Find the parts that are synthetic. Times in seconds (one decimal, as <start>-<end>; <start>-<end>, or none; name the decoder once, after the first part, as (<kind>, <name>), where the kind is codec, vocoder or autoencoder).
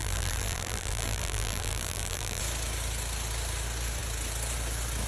0.0-2.4 (vocoder, BigVGAN v2)